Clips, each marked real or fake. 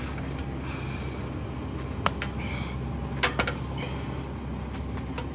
real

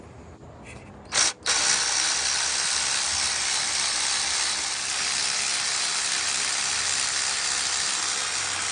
real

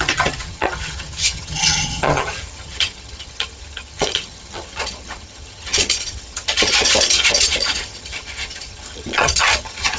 fake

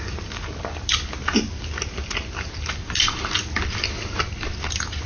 real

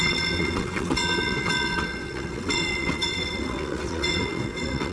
fake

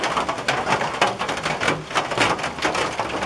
real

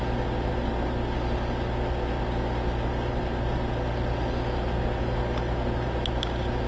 real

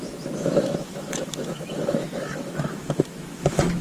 fake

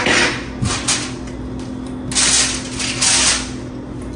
real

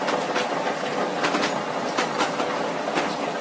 fake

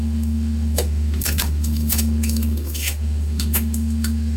fake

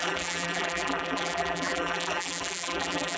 fake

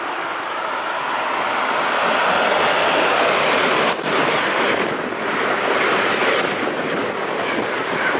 real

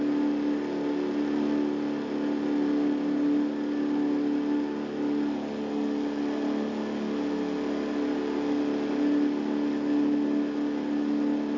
real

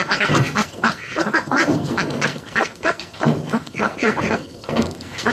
fake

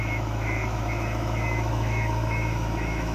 fake